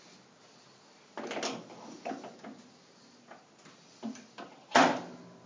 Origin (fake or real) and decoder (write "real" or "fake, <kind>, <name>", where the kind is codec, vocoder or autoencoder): real